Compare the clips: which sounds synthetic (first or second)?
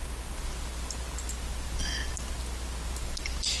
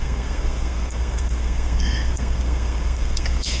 second